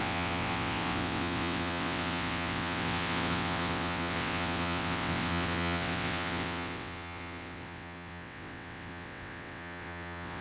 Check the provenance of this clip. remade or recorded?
remade